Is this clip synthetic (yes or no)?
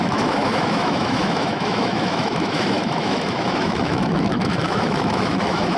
yes